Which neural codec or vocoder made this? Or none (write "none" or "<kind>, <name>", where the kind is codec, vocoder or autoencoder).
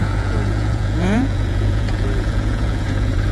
vocoder, Vocos